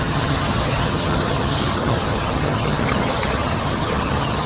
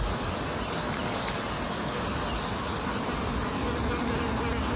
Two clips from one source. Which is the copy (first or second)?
first